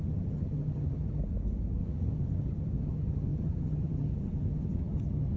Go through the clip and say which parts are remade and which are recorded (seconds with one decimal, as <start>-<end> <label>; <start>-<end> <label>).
0.0-1.2 remade; 1.2-1.8 recorded; 1.8-5.4 remade